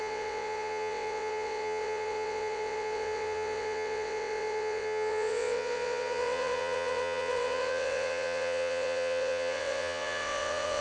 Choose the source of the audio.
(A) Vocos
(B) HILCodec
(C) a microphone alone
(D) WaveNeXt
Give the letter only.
D